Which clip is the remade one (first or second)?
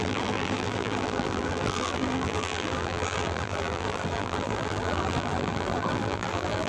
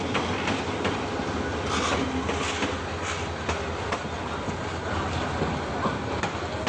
first